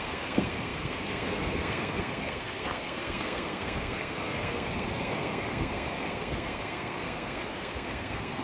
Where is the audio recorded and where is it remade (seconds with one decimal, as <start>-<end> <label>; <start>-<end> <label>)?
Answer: 0.0-8.4 remade